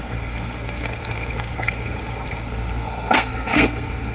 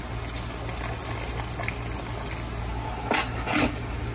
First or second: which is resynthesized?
first